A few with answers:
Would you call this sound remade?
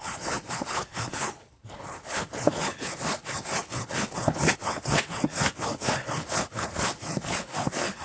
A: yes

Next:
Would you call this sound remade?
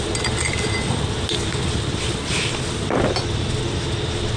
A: no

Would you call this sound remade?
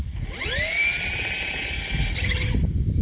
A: no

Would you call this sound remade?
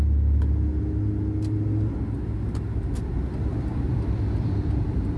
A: no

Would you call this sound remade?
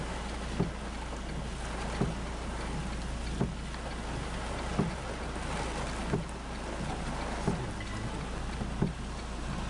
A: no